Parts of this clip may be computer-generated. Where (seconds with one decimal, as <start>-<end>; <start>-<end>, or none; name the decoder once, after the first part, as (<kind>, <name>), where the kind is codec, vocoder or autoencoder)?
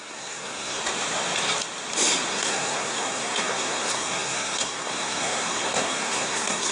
0.0-0.8 (codec, SNAC); 2.3-6.7